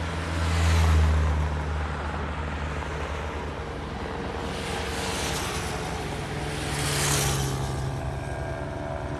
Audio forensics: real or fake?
real